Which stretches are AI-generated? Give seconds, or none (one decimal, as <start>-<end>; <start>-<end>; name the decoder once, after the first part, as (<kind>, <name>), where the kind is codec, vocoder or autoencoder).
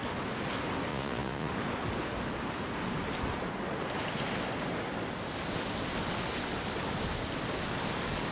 0.9-1.5 (vocoder, Vocos)